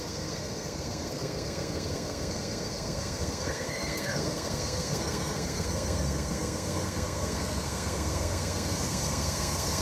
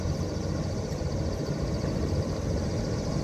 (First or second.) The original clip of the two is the second